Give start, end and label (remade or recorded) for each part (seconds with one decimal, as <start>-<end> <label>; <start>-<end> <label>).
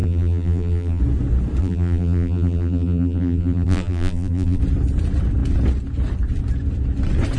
0.0-1.0 remade; 1.0-1.6 recorded; 1.6-4.6 remade; 4.6-7.4 recorded